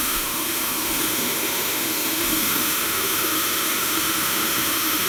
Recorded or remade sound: remade